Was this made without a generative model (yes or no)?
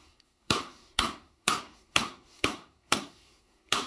no